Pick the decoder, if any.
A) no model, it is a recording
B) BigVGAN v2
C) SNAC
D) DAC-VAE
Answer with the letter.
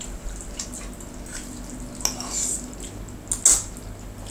A